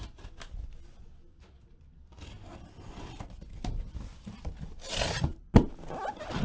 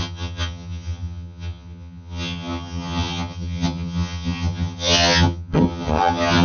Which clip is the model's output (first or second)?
second